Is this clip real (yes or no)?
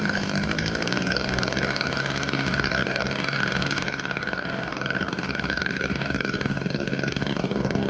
no